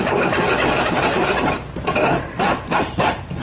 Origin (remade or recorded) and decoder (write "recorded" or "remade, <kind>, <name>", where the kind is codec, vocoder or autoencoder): remade, vocoder, BigVGAN v2